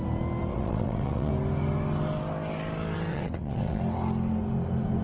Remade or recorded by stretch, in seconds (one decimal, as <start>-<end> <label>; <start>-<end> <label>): 0.0-0.5 recorded; 0.5-1.3 remade; 1.3-3.1 recorded; 3.1-3.8 remade; 3.8-5.0 recorded